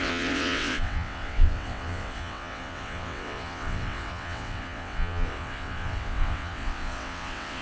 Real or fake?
fake